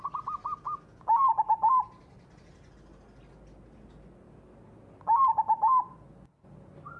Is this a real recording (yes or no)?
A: yes